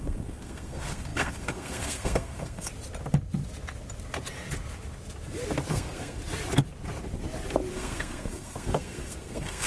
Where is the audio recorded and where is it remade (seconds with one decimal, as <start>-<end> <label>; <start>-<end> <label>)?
0.0-2.7 remade; 2.7-5.7 recorded; 5.7-6.2 remade; 6.2-7.7 recorded; 7.7-9.7 remade